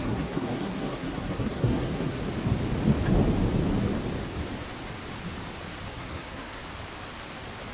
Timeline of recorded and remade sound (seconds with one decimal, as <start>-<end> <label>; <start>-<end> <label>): 0.0-2.2 remade; 2.2-5.9 recorded; 5.9-6.6 remade; 6.6-7.7 recorded

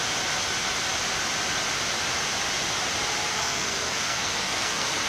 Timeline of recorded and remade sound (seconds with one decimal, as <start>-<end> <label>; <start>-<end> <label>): 0.0-3.3 recorded; 3.3-5.1 remade